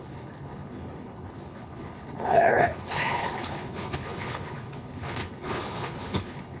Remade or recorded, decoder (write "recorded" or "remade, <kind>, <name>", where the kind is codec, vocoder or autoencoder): remade, codec, HILCodec